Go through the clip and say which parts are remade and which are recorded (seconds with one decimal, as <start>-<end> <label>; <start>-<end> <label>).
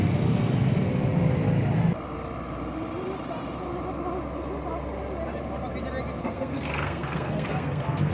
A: 0.0-6.2 recorded; 6.2-8.1 remade